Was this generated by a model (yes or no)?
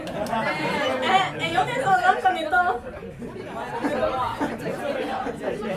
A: no